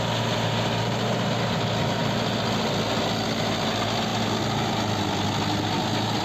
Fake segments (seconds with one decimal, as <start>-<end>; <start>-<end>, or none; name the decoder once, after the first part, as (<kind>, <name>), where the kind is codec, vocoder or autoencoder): none